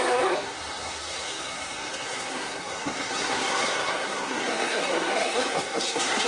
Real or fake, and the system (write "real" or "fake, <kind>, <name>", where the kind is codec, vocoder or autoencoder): fake, codec, SNAC